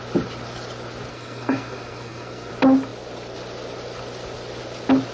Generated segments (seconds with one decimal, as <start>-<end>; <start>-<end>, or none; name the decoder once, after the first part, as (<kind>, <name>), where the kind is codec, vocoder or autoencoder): 1.1-2.5 (codec, SNAC)